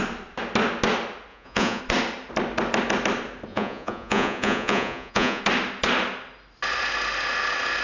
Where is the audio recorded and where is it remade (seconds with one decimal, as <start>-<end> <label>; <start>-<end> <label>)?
0.0-1.3 recorded; 1.3-1.8 remade; 1.8-3.5 recorded; 3.5-5.4 remade; 5.4-7.8 recorded